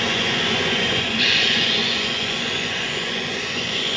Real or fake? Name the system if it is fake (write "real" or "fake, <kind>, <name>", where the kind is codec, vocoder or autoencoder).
fake, vocoder, Vocos